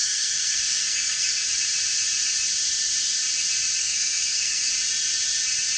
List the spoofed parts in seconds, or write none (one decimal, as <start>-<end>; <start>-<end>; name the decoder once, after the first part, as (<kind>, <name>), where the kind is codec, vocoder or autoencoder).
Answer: 0.0-1.5 (codec, SNAC); 3.8-4.7